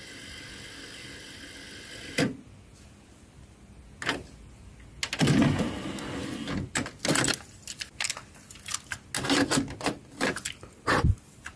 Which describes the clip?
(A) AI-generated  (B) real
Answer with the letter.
B